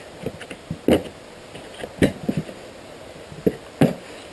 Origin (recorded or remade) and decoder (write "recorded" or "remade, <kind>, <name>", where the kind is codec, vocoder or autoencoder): recorded